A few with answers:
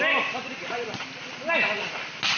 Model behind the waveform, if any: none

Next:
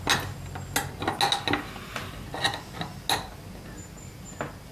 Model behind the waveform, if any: none